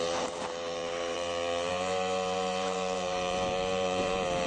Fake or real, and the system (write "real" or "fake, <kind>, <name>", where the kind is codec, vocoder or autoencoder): fake, vocoder, BigVGAN v2